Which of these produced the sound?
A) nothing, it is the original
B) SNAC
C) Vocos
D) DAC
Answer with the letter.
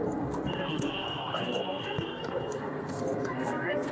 B